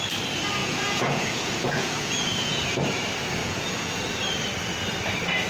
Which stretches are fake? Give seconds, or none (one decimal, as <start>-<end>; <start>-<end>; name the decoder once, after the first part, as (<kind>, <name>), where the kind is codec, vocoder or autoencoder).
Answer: 0.6-2.8 (vocoder, Vocos); 3.4-4.0

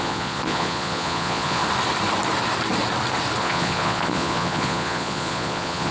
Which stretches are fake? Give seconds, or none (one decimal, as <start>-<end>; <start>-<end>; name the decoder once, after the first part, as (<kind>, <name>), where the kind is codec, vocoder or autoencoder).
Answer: 0.0-1.6 (vocoder, Vocos); 3.4-5.9

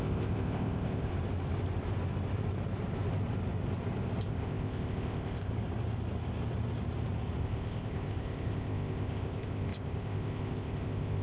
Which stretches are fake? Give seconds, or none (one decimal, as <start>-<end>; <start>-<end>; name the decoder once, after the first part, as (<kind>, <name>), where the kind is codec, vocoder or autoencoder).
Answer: 0.0-1.1 (codec, ZipCodec); 4.3-5.5; 7.4-11.2

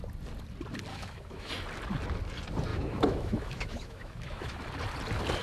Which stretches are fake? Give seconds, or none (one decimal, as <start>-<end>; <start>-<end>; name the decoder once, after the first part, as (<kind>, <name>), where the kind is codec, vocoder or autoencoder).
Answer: 0.9-1.5 (autoencoder, DAC-VAE); 2.7-4.6

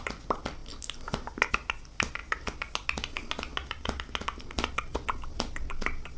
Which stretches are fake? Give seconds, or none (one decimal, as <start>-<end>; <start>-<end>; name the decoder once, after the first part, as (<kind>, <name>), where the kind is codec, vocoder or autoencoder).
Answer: none

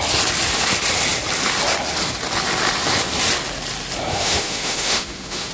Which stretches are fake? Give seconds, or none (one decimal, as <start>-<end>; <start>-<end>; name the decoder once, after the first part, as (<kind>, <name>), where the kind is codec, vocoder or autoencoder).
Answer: 4.1-5.5 (autoencoder, DAC-VAE)

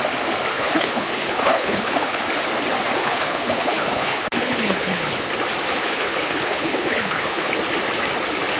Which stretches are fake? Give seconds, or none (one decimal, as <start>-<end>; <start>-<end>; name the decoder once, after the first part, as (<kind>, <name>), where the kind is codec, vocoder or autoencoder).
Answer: 0.5-2.2 (codec, HILCodec); 3.0-5.3; 5.8-7.5